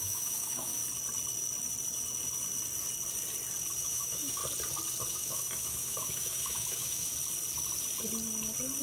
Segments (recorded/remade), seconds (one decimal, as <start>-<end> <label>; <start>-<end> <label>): 0.0-0.8 remade; 0.8-3.8 recorded; 3.8-4.4 remade; 4.4-5.1 recorded; 5.1-7.1 remade; 7.1-8.8 recorded